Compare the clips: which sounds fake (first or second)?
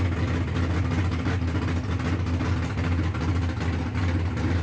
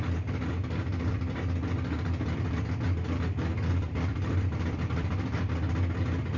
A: second